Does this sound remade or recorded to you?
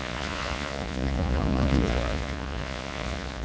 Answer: remade